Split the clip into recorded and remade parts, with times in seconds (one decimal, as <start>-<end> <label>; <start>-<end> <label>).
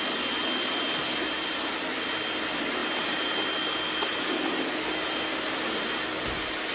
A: 0.0-6.7 recorded